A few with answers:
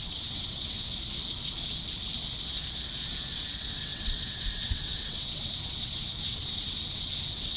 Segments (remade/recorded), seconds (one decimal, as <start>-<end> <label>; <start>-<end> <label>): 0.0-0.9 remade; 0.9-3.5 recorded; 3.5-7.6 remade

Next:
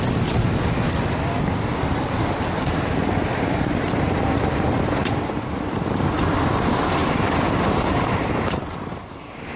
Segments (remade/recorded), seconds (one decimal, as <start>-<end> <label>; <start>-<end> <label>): 0.0-9.6 remade

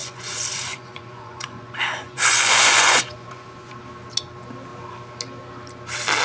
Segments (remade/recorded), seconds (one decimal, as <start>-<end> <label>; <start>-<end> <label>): 0.0-3.7 remade; 3.7-6.2 recorded